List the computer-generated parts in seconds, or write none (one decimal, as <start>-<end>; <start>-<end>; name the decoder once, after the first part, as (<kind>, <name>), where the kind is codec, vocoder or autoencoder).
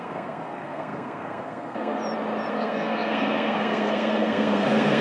0.0-2.0 (codec, SNAC); 2.5-5.0